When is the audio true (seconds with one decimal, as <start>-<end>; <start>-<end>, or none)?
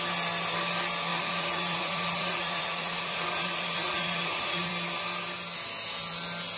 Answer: 0.0-1.1; 4.7-6.6